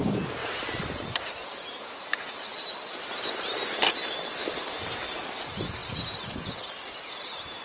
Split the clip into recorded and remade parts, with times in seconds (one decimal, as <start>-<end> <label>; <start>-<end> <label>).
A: 0.0-0.4 recorded; 0.4-3.9 remade; 3.9-5.8 recorded; 5.8-7.1 remade; 7.1-7.6 recorded